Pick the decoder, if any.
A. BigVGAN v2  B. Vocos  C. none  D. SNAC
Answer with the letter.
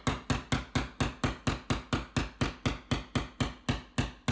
C